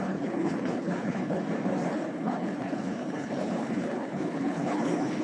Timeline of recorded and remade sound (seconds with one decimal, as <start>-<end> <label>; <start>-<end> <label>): 0.0-1.4 remade; 1.4-1.9 recorded; 1.9-5.2 remade